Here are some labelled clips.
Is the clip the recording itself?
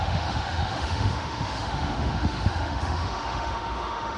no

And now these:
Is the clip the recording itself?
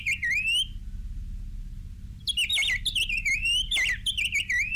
yes